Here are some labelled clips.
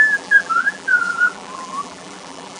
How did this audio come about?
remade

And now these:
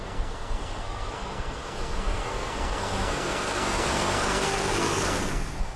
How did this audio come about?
remade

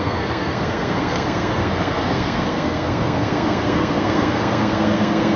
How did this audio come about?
remade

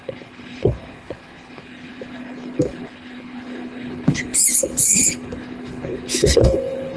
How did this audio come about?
remade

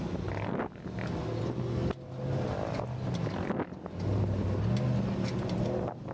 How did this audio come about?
recorded